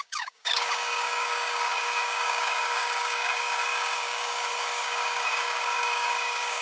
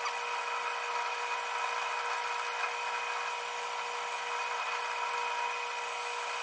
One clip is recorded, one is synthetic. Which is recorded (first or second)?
second